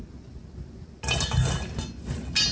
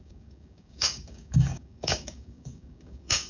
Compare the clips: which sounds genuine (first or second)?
first